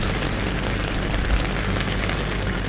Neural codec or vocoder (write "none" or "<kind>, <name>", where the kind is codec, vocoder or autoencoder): none